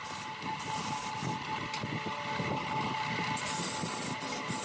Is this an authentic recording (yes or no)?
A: yes